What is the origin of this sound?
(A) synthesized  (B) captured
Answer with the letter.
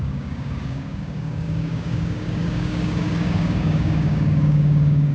A